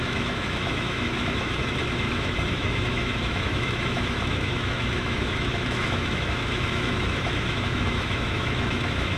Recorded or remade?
remade